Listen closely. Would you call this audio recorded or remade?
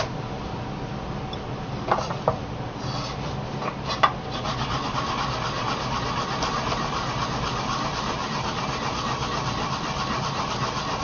recorded